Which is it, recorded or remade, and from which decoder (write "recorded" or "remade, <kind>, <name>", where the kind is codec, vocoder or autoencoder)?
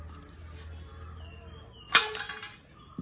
recorded